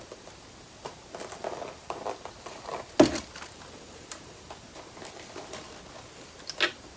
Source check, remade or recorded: recorded